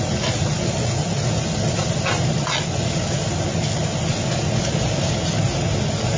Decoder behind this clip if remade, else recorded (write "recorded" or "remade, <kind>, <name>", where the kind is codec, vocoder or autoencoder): recorded